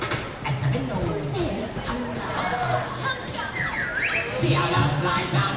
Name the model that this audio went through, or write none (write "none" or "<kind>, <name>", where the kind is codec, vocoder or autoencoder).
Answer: none